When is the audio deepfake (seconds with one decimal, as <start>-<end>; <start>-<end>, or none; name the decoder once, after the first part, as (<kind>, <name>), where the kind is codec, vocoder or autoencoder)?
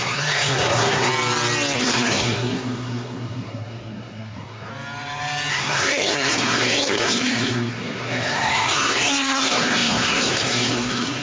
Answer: 0.0-1.1 (codec, SNAC); 1.8-4.7; 5.5-11.2